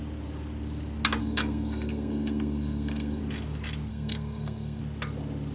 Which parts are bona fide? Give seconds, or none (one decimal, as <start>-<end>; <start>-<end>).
0.0-1.2; 3.2-3.9; 4.8-5.5